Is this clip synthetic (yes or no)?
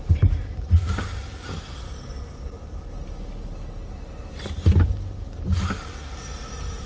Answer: no